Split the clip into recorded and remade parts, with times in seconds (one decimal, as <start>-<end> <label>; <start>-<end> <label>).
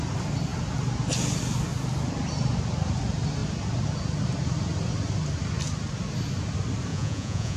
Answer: 0.0-6.9 recorded; 6.9-7.6 remade